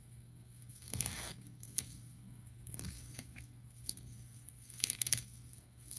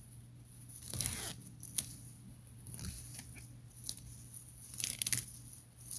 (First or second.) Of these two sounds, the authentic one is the second